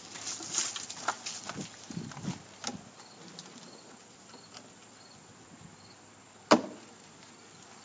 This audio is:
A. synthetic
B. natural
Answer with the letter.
B